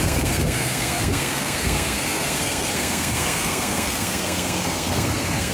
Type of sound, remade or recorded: remade